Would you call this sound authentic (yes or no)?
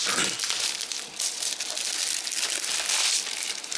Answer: yes